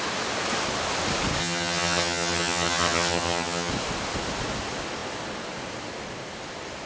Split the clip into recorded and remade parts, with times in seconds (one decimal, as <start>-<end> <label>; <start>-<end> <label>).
0.0-1.4 recorded; 1.4-3.7 remade; 3.7-6.9 recorded